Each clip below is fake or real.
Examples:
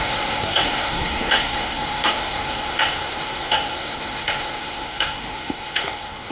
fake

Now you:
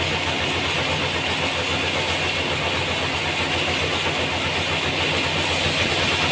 real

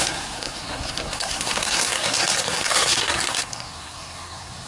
fake